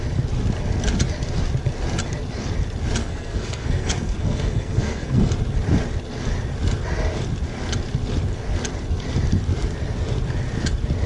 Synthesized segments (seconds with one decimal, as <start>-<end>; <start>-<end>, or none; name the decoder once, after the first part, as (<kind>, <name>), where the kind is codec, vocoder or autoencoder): 3.0-5.3 (codec, SNAC)